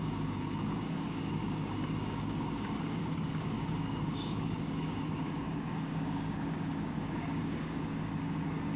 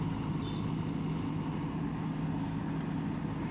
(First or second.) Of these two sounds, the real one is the second